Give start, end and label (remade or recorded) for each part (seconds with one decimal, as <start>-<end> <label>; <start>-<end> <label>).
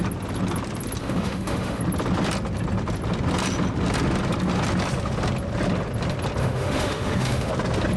0.0-1.0 recorded; 1.0-1.8 remade; 1.8-6.4 recorded; 6.4-7.5 remade; 7.5-8.0 recorded